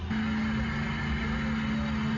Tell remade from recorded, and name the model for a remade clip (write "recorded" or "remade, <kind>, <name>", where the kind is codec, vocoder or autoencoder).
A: recorded